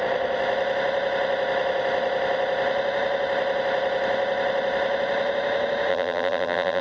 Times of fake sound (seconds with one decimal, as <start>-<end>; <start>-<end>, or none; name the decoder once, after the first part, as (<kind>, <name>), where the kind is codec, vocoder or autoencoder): 5.9-6.8 (vocoder, BigVGAN v2)